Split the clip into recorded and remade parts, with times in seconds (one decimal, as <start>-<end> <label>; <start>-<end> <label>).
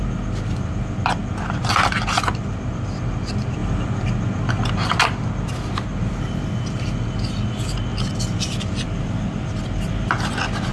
0.0-10.7 recorded